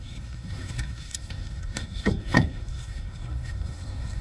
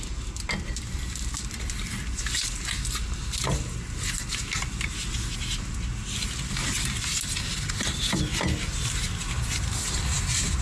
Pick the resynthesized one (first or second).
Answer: first